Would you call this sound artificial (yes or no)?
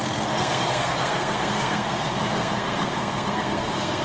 yes